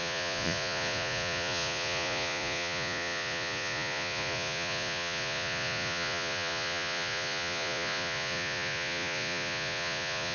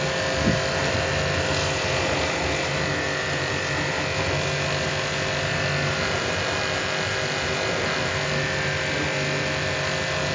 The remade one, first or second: first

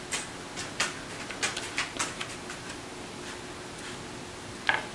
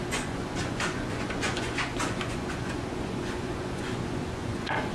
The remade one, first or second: second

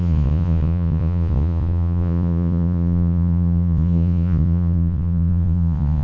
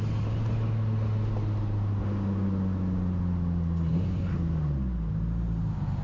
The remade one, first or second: first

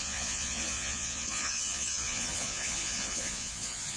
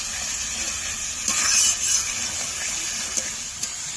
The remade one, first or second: first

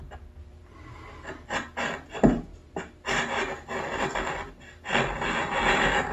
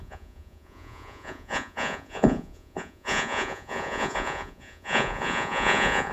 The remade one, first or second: second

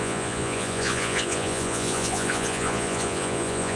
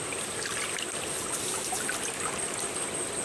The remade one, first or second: first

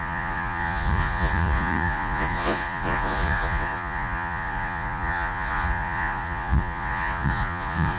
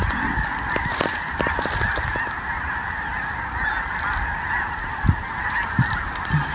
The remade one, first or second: first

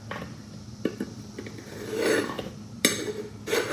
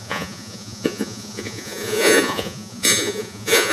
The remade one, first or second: second